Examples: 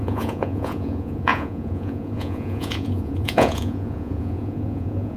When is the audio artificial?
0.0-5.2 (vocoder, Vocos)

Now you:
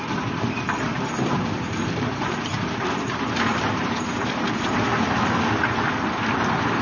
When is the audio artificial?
0.0-0.9 (vocoder, BigVGAN v2); 1.5-2.5; 3.5-4.9; 6.2-6.8

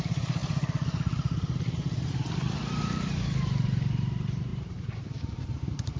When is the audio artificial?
0.0-0.4 (vocoder, BigVGAN v2); 2.0-6.0

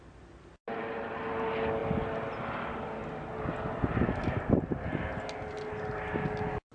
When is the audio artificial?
none